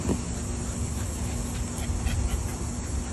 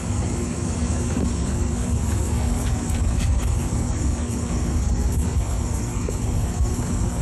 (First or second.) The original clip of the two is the first